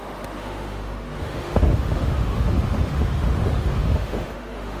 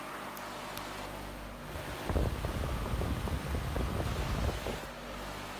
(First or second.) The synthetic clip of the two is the first